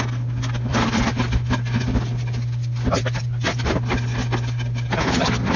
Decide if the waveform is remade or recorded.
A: recorded